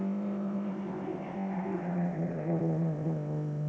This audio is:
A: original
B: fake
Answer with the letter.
B